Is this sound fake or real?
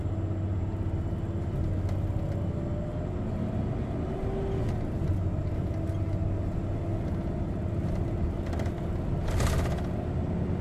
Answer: real